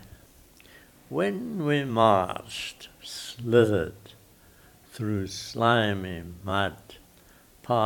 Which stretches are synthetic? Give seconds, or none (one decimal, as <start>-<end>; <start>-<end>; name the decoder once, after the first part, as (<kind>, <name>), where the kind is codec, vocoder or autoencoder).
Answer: 0.0-1.0 (vocoder, BigVGAN v2); 1.9-6.5